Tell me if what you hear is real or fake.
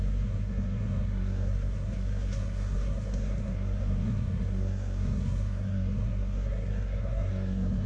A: fake